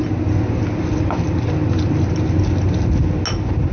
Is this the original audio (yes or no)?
yes